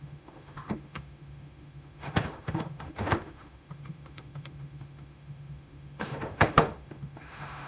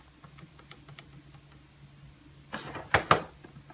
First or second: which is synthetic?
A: first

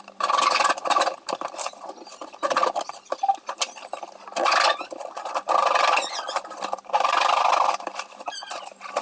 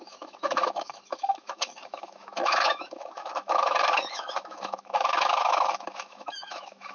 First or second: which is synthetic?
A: second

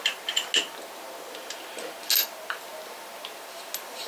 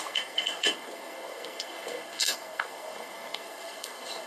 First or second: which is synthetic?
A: second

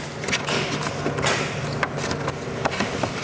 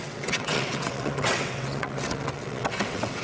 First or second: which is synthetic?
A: second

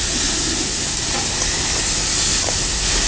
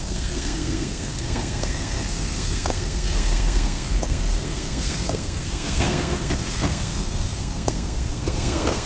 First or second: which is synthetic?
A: second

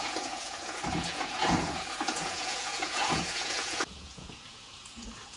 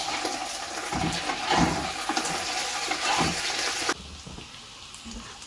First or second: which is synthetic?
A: first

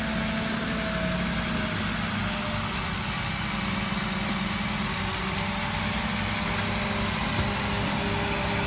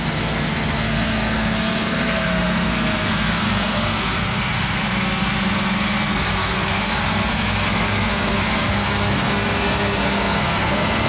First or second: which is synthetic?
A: second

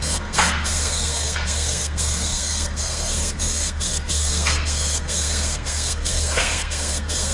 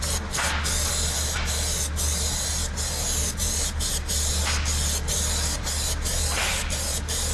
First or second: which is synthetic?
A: first